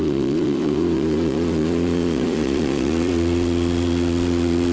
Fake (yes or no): yes